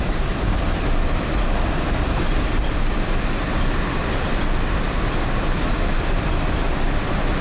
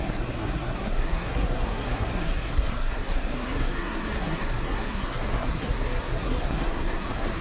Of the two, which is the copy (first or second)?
second